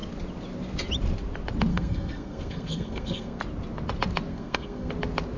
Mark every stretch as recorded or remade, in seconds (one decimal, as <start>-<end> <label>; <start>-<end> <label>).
0.0-1.7 recorded; 1.7-3.4 remade; 3.4-4.3 recorded; 4.3-4.9 remade; 4.9-5.4 recorded